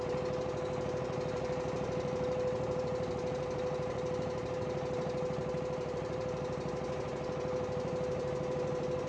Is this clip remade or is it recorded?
remade